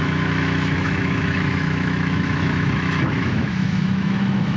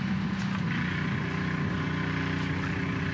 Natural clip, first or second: second